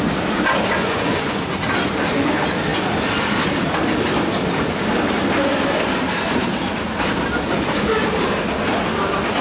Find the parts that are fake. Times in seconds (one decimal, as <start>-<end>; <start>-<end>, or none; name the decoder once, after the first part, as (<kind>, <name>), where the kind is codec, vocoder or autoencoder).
0.8-1.4 (vocoder, Vocos)